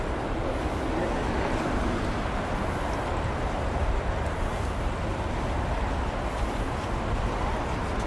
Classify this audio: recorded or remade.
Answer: recorded